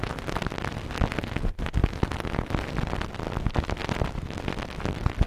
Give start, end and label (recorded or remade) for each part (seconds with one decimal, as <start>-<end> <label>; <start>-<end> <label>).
0.0-1.8 recorded; 1.8-2.3 remade; 2.3-5.3 recorded